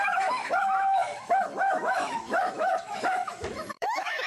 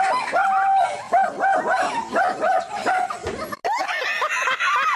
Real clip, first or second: second